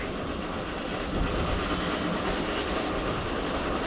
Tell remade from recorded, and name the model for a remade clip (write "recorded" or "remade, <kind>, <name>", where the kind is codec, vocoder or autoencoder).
recorded